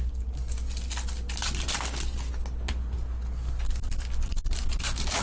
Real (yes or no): yes